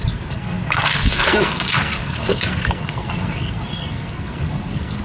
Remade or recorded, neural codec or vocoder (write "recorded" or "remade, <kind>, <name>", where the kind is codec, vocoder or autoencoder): remade, codec, SNAC